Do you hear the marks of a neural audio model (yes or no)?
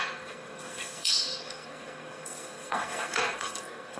yes